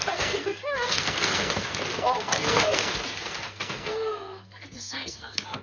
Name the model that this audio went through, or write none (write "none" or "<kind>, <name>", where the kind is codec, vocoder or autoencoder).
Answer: codec, SNAC